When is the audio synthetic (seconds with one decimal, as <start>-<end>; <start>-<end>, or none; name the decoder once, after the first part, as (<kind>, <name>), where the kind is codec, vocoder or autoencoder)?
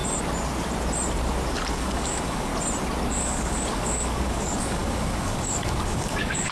1.7-2.5 (codec, DAC); 3.1-6.5